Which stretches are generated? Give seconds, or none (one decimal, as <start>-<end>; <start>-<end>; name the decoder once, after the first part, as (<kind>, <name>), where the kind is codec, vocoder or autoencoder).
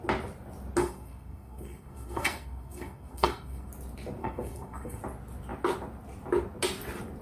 0.8-3.7 (codec, SNAC); 4.2-5.0